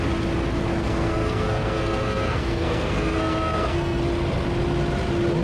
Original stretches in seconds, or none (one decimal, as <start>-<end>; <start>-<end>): 0.0-0.8; 4.0-5.4